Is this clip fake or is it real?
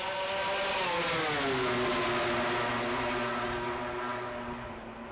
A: real